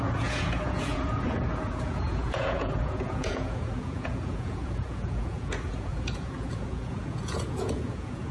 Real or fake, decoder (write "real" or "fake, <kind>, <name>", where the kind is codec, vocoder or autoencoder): fake, vocoder, Vocos